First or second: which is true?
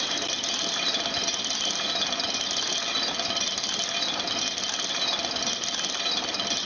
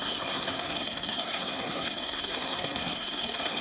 first